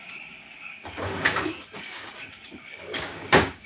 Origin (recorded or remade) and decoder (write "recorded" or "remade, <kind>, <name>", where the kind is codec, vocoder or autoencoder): remade, codec, DAC